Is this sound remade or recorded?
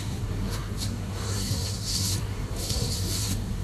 remade